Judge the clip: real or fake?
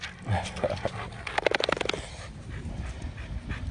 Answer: real